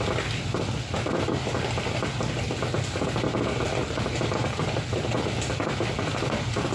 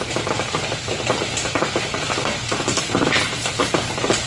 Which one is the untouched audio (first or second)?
first